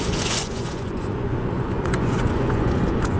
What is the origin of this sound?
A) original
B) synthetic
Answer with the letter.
B